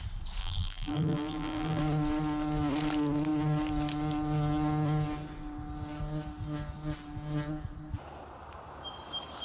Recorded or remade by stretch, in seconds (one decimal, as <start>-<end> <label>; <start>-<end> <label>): 0.0-0.4 recorded; 0.4-1.8 remade; 1.8-9.4 recorded